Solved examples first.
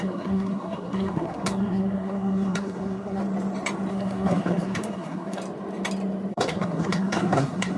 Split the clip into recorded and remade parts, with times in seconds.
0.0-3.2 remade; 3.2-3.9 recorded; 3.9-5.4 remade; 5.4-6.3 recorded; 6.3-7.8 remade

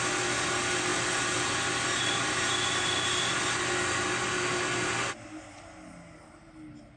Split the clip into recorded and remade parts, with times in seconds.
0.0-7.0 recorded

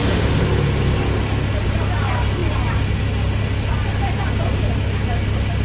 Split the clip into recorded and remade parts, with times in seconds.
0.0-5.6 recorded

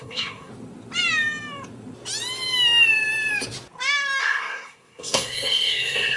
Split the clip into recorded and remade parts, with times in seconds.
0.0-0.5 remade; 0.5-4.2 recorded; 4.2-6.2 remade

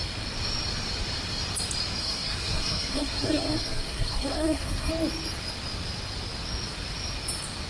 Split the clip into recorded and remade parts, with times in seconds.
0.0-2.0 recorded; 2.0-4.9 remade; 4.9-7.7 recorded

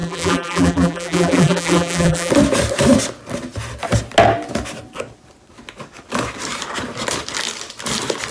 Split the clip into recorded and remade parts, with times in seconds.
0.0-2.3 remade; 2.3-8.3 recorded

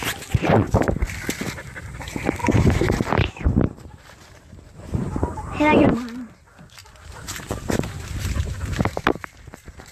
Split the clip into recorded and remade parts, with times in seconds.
0.0-2.4 recorded; 2.4-5.9 remade; 5.9-6.8 recorded; 6.8-7.9 remade; 7.9-9.9 recorded